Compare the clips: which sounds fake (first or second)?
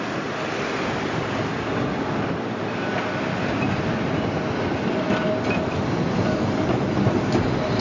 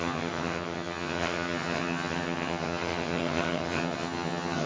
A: second